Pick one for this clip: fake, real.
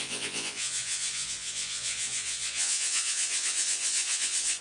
fake